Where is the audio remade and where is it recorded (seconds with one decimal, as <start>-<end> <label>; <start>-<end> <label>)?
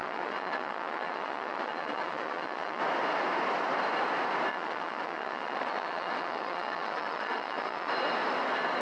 0.0-2.8 remade; 2.8-4.5 recorded; 4.5-7.9 remade; 7.9-8.8 recorded